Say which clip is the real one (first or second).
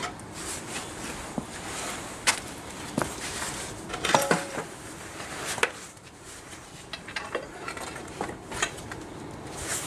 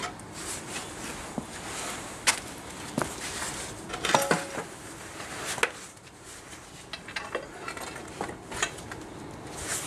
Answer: second